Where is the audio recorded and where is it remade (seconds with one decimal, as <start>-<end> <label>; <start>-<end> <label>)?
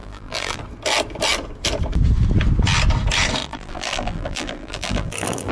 0.0-0.6 remade; 0.6-3.4 recorded; 3.4-5.5 remade